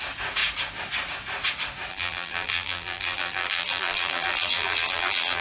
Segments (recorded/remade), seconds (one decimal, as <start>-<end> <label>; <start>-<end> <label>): 0.0-1.9 recorded; 1.9-5.4 remade